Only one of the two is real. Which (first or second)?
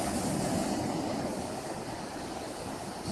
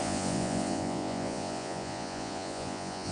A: first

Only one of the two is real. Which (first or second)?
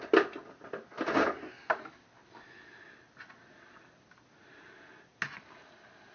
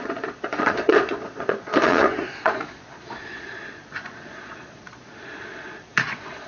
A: first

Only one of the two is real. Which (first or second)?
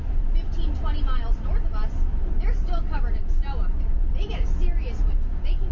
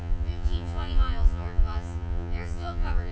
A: first